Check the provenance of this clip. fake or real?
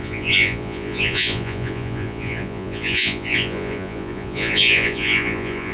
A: fake